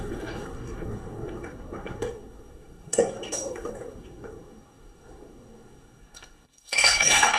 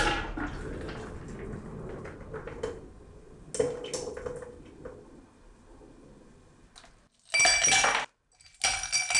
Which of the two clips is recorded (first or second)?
second